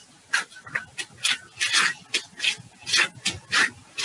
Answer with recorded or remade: recorded